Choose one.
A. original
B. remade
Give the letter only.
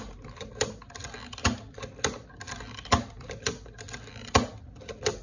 A